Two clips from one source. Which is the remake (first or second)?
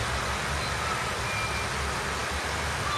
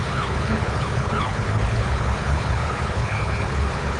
second